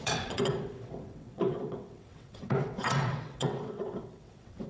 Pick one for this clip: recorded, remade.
remade